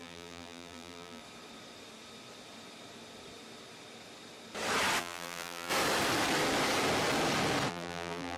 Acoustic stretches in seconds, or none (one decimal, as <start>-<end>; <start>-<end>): 1.2-5.0; 5.7-7.7